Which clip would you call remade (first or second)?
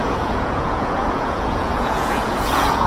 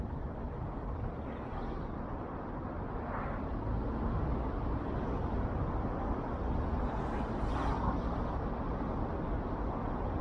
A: first